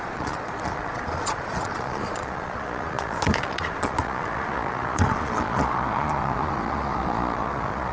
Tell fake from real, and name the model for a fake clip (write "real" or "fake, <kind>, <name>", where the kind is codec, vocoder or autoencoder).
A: fake, vocoder, Vocos